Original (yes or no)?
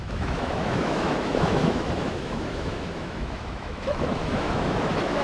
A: no